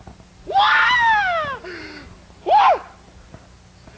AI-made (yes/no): no